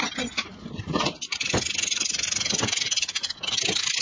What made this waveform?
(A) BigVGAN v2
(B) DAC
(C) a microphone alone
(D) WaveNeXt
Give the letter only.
C